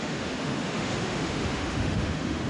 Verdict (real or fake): fake